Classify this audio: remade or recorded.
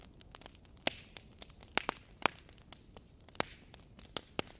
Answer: recorded